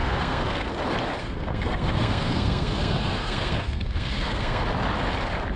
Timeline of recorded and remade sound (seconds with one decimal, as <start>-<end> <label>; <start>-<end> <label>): 0.0-0.7 remade; 0.7-1.2 recorded; 1.2-4.6 remade; 4.6-5.6 recorded